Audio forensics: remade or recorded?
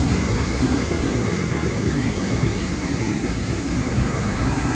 remade